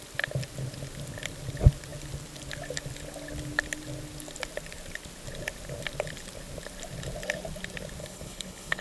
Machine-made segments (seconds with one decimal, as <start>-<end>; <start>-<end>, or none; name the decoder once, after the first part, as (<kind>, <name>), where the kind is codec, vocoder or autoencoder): 8.0-8.8 (codec, HILCodec)